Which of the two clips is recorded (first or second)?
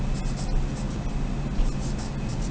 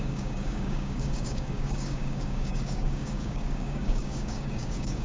first